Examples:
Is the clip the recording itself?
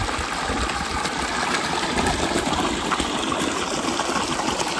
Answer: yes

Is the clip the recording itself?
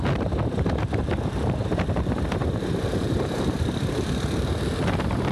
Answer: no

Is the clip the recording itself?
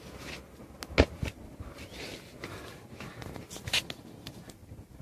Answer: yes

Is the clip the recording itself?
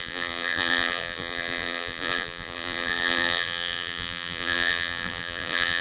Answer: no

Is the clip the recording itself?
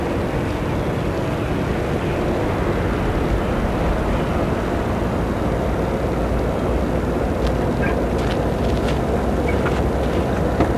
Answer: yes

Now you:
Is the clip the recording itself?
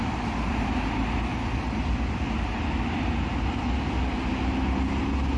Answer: yes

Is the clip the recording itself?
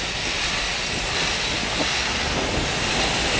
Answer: yes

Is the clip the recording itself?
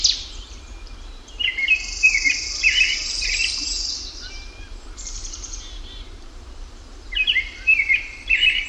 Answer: no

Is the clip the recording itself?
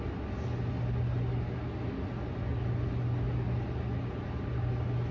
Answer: yes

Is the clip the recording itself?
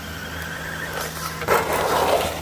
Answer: yes